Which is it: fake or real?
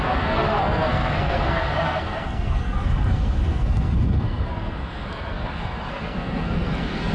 fake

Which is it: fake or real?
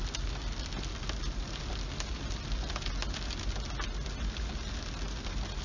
real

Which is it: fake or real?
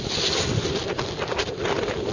real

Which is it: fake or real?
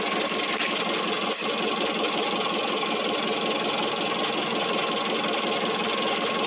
real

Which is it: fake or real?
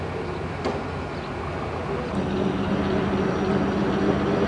real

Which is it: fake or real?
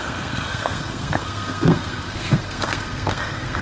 fake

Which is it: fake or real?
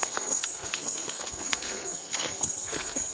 fake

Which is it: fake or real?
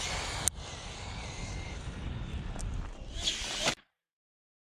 real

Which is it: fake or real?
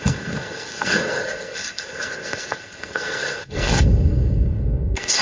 fake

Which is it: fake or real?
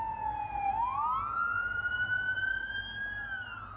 real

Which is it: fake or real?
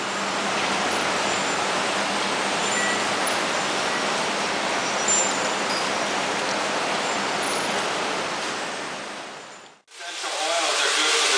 real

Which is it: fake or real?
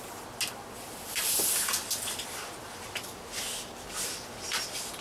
real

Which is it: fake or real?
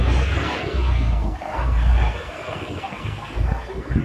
fake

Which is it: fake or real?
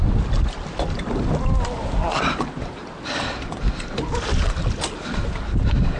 real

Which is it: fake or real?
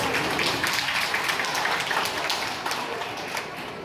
real